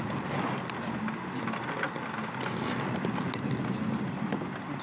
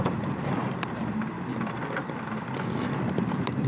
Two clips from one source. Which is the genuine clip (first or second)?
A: first